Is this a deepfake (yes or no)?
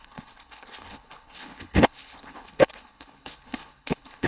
yes